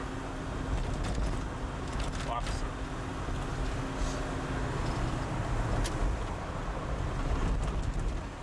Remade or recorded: recorded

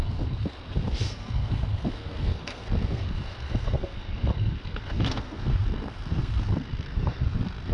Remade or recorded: remade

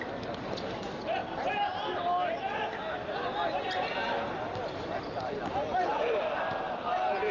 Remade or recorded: recorded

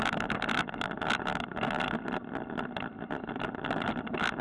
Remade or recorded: recorded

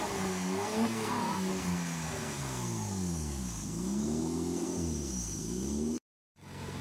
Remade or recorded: remade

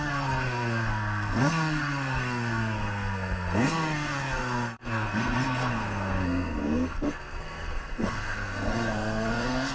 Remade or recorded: remade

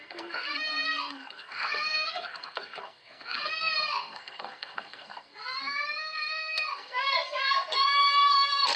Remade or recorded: remade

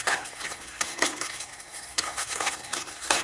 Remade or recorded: remade